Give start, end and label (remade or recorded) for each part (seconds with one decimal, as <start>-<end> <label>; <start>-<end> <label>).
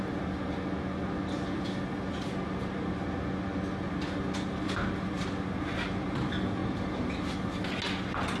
0.0-6.6 recorded; 6.6-7.4 remade; 7.4-8.4 recorded